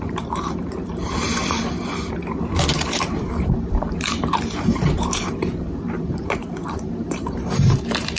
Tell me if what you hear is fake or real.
fake